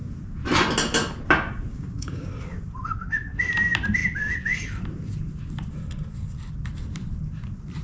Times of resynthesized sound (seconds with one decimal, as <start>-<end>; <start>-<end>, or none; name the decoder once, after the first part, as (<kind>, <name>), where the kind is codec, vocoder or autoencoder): 1.7-2.3 (codec, DAC)